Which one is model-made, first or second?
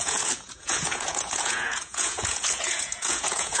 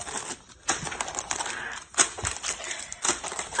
first